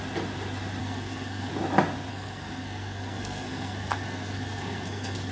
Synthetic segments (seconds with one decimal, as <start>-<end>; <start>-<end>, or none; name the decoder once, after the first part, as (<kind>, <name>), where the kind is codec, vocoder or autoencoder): 0.8-1.5 (codec, SNAC); 2.1-5.3